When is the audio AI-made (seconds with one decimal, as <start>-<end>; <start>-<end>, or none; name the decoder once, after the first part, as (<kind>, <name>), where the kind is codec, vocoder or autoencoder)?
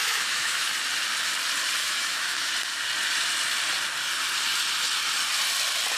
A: 0.0-0.7 (autoencoder, DAC-VAE); 1.8-2.5